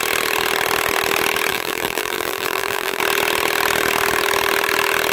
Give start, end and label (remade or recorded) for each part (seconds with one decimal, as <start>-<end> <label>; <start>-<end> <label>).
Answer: 0.0-1.5 recorded; 1.5-3.0 remade; 3.0-5.1 recorded